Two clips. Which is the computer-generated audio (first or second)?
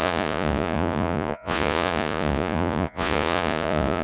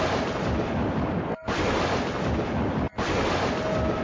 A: first